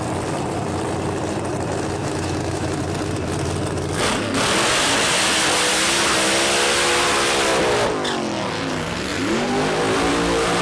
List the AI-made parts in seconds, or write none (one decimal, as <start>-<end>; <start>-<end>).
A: 2.0-2.8